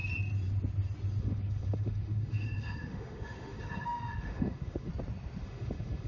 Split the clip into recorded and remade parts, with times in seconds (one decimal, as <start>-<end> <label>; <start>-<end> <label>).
0.0-1.2 recorded; 1.2-4.9 remade; 4.9-5.4 recorded; 5.4-6.1 remade